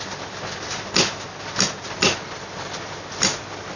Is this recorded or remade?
recorded